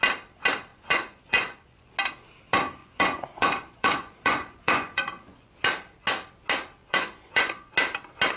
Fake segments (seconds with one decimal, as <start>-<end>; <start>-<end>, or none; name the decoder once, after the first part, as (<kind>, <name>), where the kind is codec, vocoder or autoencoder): 0.7-1.9 (vocoder, Vocos); 2.8-5.5; 6.8-7.7